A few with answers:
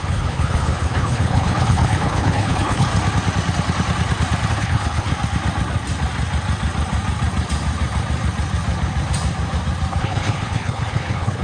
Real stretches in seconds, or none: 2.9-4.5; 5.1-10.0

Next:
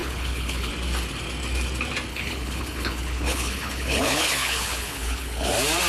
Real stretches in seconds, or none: 0.7-2.1; 5.5-5.9

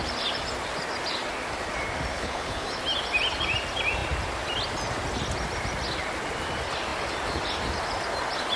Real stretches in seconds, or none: 0.0-2.1; 2.8-8.6

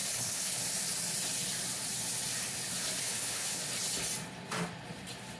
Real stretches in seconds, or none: 0.6-3.0; 3.6-5.4